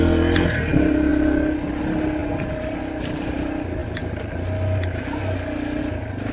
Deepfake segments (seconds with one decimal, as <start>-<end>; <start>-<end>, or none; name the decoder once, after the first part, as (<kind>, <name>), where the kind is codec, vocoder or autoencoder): none